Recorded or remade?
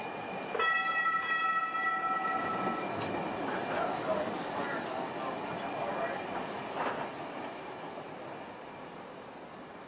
recorded